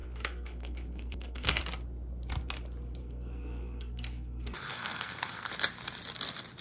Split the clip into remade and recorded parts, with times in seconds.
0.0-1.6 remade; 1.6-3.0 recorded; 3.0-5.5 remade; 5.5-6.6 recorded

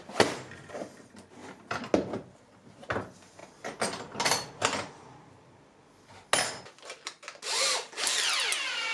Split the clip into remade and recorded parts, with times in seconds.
0.0-8.9 recorded

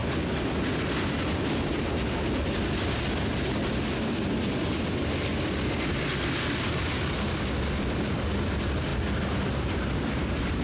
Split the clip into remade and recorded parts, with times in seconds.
0.0-10.6 recorded

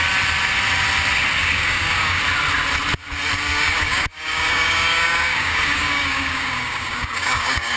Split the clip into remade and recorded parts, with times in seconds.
0.0-1.4 recorded; 1.4-2.2 remade; 2.2-3.5 recorded; 3.5-7.8 remade

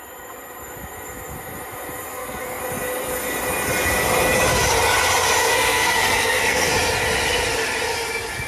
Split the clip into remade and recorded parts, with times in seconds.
0.0-2.1 recorded; 2.1-2.6 remade; 2.6-5.4 recorded; 5.4-6.7 remade; 6.7-8.5 recorded

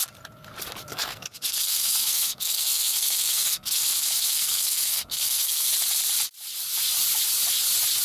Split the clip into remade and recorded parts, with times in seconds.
0.0-0.9 recorded; 0.9-5.7 remade; 5.7-8.0 recorded

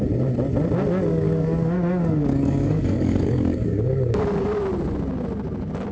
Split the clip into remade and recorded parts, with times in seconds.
0.0-1.1 recorded; 1.1-4.6 remade; 4.6-5.9 recorded